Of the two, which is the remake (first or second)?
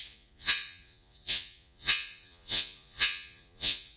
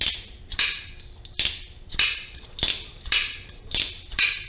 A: first